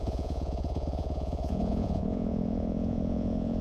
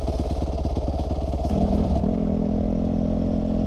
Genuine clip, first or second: second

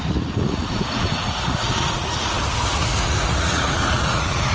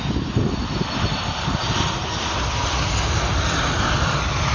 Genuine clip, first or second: second